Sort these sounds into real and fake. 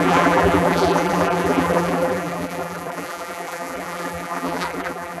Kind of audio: fake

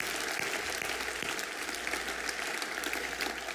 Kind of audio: real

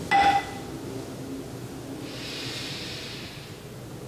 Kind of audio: real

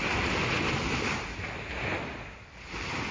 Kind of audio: real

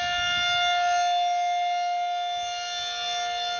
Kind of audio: real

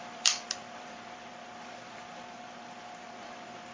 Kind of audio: fake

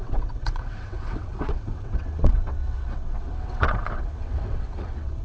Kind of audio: fake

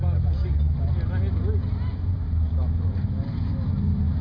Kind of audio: real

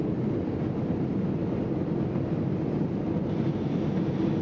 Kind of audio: real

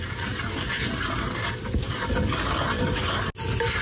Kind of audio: real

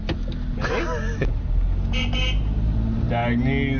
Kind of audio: real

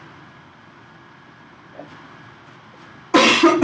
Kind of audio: real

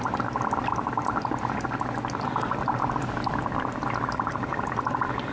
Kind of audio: real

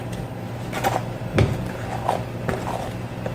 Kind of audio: real